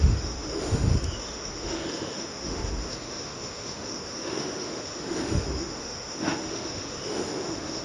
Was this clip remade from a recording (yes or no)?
yes